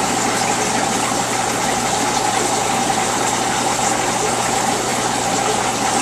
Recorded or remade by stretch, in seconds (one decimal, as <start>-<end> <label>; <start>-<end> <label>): 0.0-6.0 recorded